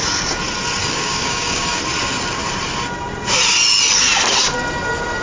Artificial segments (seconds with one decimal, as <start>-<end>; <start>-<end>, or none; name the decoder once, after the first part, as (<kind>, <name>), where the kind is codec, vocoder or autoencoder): 0.8-1.8 (codec, DAC)